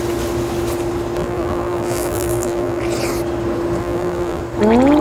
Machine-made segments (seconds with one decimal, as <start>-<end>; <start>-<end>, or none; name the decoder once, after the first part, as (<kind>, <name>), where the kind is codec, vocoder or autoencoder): 1.2-2.8 (vocoder, BigVGAN v2); 3.8-4.4